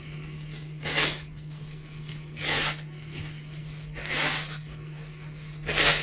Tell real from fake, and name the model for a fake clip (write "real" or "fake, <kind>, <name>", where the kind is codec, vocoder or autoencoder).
fake, codec, SNAC